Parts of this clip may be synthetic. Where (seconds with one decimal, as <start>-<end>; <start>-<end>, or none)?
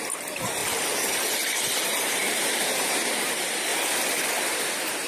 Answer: 0.0-0.6; 1.8-3.7; 4.3-5.1